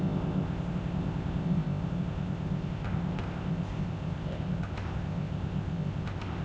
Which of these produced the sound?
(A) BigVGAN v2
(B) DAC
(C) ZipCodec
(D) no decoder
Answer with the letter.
C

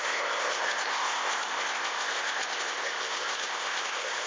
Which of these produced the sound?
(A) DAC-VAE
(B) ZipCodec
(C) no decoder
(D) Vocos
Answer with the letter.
B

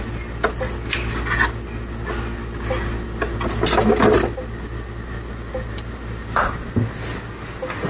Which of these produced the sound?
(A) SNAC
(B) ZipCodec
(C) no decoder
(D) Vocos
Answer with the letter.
C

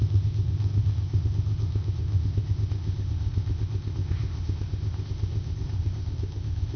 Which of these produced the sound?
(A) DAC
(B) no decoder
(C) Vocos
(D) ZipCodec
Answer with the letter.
D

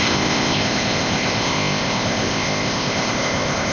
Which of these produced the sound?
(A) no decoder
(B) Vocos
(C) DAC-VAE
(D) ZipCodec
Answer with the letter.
D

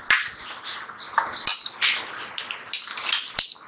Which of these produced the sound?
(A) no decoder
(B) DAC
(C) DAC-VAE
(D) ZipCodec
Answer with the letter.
A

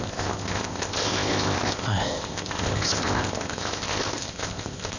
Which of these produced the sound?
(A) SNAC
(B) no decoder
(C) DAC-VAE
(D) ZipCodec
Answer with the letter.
D